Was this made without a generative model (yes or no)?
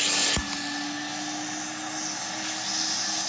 yes